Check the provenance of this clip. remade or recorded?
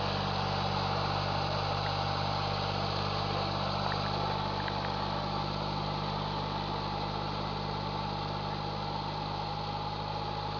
recorded